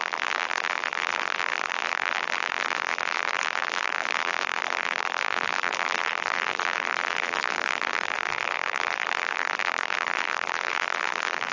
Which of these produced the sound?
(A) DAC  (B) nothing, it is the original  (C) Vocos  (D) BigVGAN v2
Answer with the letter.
D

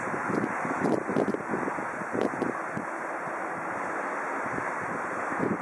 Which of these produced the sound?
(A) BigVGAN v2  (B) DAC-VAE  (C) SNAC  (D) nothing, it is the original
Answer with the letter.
D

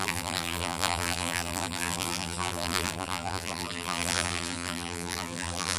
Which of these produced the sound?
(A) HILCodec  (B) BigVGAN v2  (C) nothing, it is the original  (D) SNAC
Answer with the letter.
B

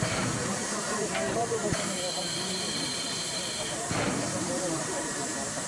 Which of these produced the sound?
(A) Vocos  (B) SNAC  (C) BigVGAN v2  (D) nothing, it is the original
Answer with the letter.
C